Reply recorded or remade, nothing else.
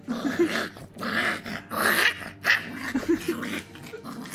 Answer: recorded